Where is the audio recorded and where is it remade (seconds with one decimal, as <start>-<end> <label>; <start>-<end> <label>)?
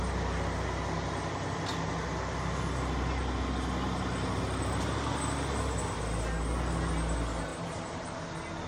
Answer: 0.0-7.5 recorded; 7.5-8.1 remade; 8.1-8.7 recorded